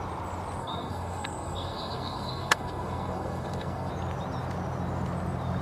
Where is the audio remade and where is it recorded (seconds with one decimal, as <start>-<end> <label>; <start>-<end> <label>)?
0.0-0.6 recorded; 0.6-3.9 remade; 3.9-5.6 recorded

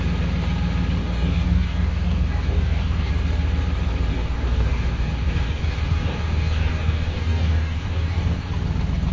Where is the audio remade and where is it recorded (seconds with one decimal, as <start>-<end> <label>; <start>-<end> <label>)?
0.0-1.0 recorded; 1.0-3.1 remade; 3.1-4.1 recorded; 4.1-8.5 remade; 8.5-9.1 recorded

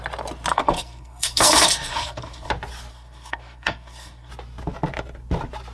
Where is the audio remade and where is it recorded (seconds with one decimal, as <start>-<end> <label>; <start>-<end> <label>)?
0.0-0.5 recorded; 0.5-2.5 remade; 2.5-2.9 recorded; 2.9-4.3 remade; 4.3-5.7 recorded

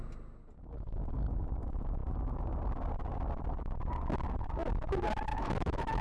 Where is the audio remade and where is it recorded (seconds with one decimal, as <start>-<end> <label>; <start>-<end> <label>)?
0.0-5.3 recorded; 5.3-6.0 remade